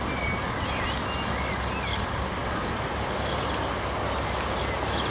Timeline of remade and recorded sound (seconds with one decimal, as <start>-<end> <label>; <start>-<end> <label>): 0.0-5.1 recorded